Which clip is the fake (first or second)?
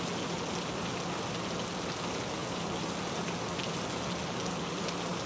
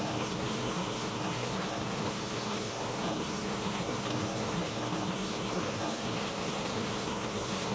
second